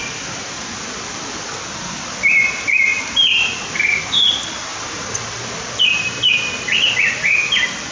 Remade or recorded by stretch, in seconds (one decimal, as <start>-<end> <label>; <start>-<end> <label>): 0.0-4.7 recorded; 4.7-5.7 remade; 5.7-7.9 recorded